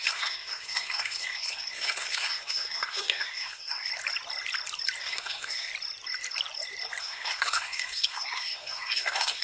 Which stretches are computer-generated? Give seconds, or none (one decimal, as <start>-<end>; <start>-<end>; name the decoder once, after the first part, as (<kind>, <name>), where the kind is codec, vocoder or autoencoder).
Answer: 0.0-3.9 (codec, SNAC); 5.0-5.7; 7.0-9.4